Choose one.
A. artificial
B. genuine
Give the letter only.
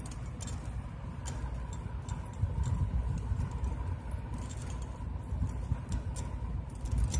B